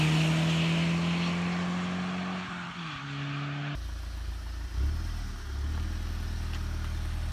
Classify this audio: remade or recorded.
recorded